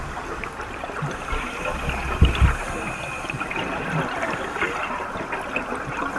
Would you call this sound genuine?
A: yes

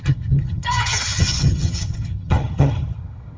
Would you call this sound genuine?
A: no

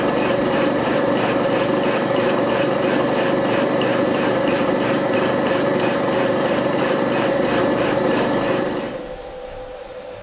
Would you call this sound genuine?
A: no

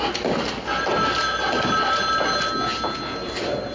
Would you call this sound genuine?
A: yes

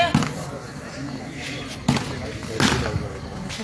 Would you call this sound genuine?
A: yes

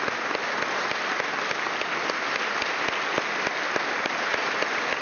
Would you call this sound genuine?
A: yes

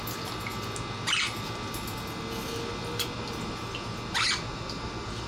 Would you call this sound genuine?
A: yes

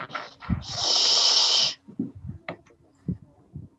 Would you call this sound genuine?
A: yes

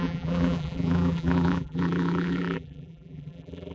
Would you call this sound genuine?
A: no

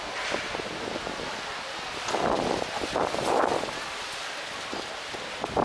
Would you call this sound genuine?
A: yes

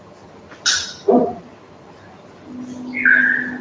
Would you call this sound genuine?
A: yes